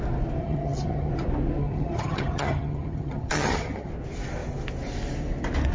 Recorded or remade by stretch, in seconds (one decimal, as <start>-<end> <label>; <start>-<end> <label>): 0.0-0.4 recorded; 0.4-1.1 remade; 1.1-1.6 recorded; 1.6-3.9 remade; 3.9-5.7 recorded